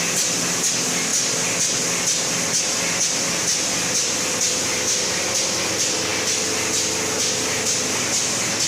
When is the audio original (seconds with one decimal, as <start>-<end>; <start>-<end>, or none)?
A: 0.0-8.7

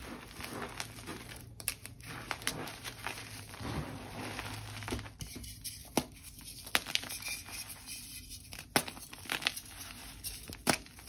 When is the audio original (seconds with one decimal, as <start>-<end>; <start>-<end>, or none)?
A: 0.0-1.1; 4.2-11.1

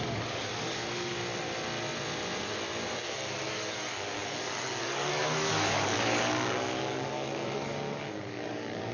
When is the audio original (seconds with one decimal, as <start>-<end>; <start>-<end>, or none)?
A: 0.8-3.5

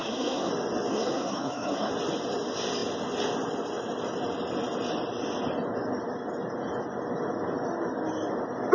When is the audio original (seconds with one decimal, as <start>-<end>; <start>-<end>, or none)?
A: 0.5-0.9; 1.9-8.7

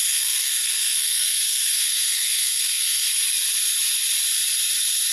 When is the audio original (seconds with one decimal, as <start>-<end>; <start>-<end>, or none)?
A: 3.1-5.1

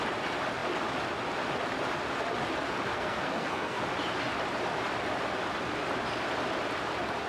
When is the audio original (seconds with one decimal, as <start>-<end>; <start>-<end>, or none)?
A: 0.0-2.9; 3.8-7.3